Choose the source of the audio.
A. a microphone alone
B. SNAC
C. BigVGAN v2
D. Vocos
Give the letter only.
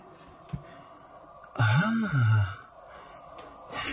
A